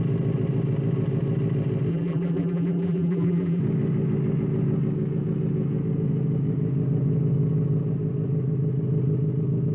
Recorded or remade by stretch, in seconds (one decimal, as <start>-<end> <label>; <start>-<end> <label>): 0.0-1.9 recorded; 1.9-3.6 remade; 3.6-9.7 recorded